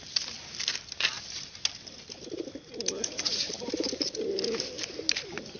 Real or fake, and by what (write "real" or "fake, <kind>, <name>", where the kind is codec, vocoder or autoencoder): real